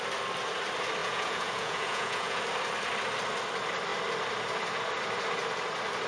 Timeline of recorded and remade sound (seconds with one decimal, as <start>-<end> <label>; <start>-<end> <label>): 0.0-1.0 recorded; 1.0-2.4 remade; 2.4-6.1 recorded